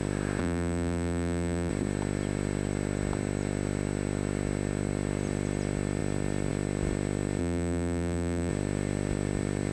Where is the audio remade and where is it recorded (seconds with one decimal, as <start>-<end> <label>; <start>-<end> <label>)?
0.0-0.4 recorded; 0.4-1.7 remade; 1.7-7.4 recorded; 7.4-8.5 remade; 8.5-9.7 recorded